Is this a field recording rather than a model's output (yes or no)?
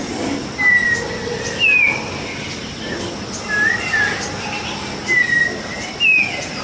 yes